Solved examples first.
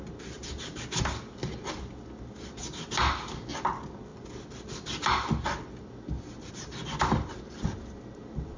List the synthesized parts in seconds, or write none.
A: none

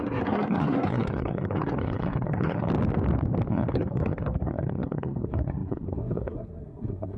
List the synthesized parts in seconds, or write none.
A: 0.0-2.7 (codec, SNAC); 3.5-7.2